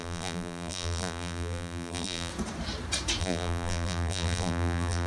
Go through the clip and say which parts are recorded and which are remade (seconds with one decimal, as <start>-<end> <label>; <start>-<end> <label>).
0.0-2.3 remade; 2.3-3.2 recorded; 3.2-5.1 remade